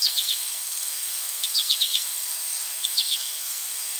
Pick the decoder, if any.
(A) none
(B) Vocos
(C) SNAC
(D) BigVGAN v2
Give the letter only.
C